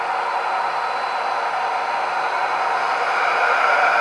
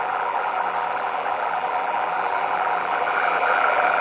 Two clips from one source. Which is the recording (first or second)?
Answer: first